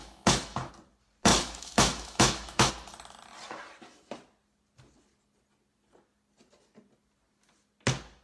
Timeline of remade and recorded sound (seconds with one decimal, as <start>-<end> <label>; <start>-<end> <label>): 0.0-0.7 remade; 0.7-1.3 recorded; 1.3-2.7 remade; 2.7-8.2 recorded